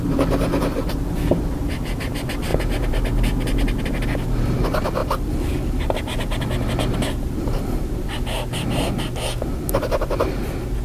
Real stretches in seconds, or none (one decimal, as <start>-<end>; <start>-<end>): none